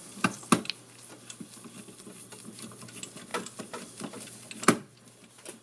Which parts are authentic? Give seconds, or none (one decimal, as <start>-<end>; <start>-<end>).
0.0-3.3; 4.1-5.6